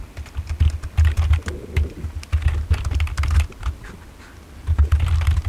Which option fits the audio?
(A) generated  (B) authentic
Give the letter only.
B